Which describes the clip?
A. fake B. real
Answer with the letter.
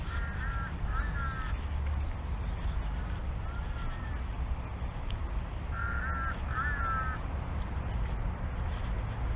B